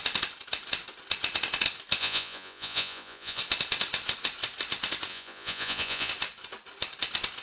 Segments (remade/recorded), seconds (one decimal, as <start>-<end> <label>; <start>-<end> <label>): 0.0-2.0 recorded; 2.0-3.4 remade; 3.4-5.1 recorded; 5.1-6.1 remade; 6.1-7.4 recorded